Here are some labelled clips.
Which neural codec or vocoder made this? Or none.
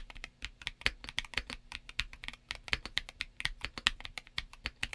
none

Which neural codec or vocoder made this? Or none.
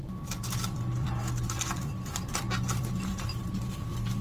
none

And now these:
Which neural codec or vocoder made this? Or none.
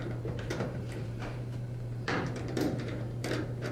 vocoder, BigVGAN v2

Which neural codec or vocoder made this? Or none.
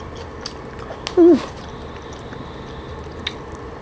none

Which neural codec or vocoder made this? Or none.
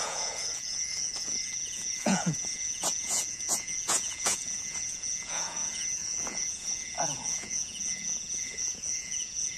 vocoder, Vocos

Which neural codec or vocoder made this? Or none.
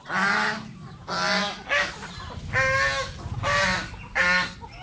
none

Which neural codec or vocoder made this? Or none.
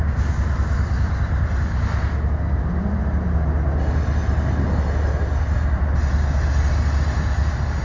none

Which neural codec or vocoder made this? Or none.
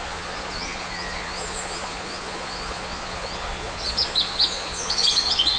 vocoder, Vocos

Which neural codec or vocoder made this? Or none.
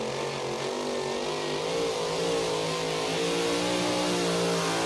none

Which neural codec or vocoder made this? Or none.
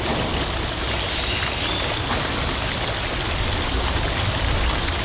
none